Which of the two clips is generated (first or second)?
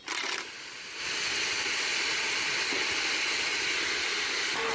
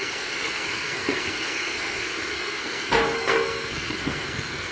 second